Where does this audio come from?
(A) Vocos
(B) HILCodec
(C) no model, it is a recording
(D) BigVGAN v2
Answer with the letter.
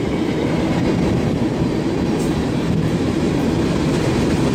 D